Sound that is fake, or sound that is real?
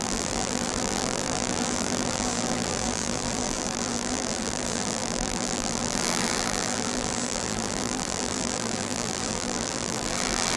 fake